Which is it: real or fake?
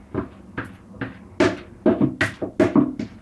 real